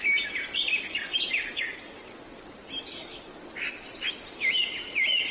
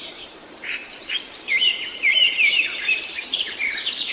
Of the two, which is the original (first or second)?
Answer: first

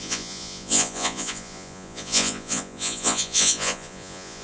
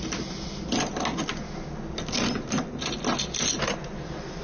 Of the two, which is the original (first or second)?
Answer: second